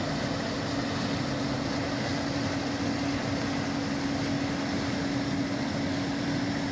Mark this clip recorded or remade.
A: recorded